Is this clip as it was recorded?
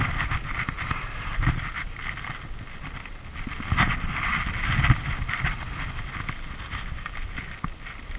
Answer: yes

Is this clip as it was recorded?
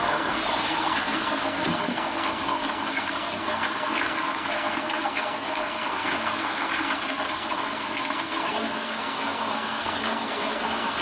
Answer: no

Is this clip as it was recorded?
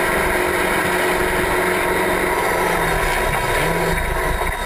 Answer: yes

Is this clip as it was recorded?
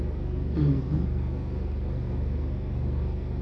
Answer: no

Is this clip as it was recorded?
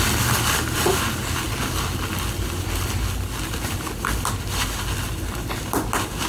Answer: yes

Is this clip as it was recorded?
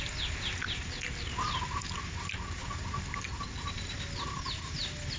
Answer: yes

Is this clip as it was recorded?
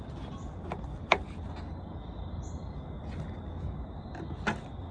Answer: yes